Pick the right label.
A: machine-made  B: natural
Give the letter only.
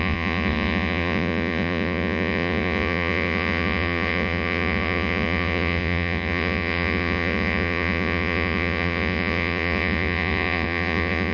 A